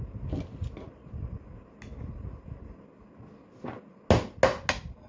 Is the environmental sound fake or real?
real